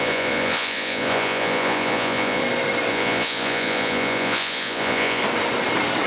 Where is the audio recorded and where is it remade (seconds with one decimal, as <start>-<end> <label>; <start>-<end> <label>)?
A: 0.0-2.4 remade; 2.4-2.9 recorded; 2.9-5.2 remade; 5.2-6.1 recorded